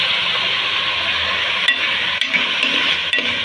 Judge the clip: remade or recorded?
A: recorded